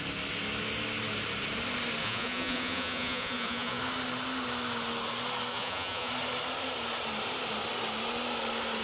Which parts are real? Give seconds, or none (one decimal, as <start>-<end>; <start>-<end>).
0.0-2.0; 3.8-5.5; 6.1-8.8